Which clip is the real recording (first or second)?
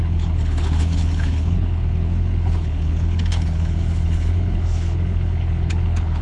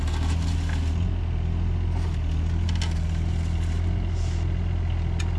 second